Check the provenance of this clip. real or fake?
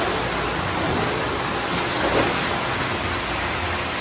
real